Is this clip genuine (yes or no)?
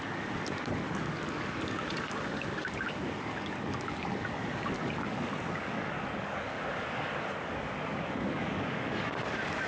no